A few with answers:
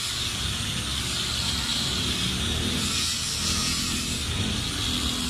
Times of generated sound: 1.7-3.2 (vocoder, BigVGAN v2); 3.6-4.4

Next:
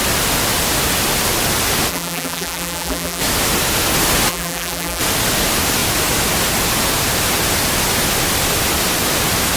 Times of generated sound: 1.9-3.2 (vocoder, BigVGAN v2); 4.3-5.0

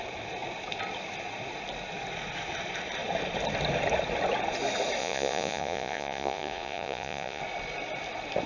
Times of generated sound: 5.0-7.4 (vocoder, Vocos)

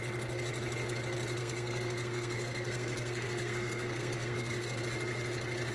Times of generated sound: 1.4-4.8 (codec, SNAC)

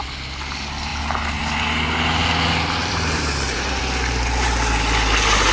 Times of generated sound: 2.8-3.8 (vocoder, BigVGAN v2)

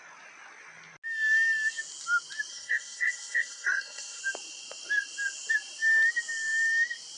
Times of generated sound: 2.5-4.2 (codec, SNAC)

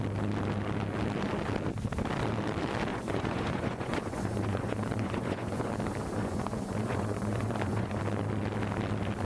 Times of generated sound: 2.9-5.7 (vocoder, Vocos); 6.2-8.0

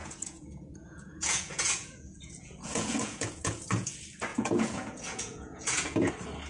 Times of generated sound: 0.0-3.9 (vocoder, Vocos); 4.3-6.1